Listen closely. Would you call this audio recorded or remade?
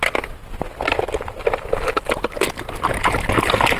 recorded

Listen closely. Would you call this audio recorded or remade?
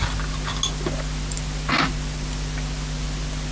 recorded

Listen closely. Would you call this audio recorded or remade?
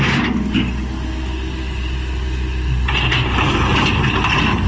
recorded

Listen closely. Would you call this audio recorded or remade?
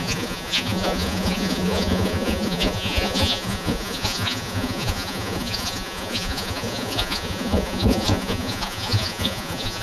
remade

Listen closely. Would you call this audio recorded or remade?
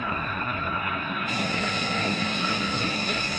remade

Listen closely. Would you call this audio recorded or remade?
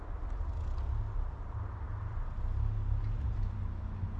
recorded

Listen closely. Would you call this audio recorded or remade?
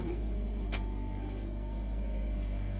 remade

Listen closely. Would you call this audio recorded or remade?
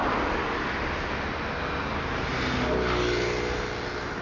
recorded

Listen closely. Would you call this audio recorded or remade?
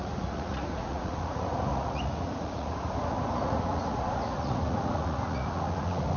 remade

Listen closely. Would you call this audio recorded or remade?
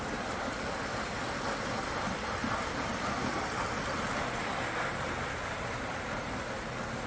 recorded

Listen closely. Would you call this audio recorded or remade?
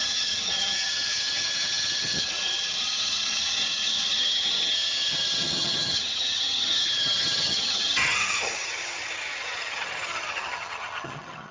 remade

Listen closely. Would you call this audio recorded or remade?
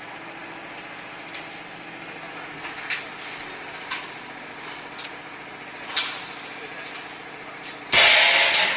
recorded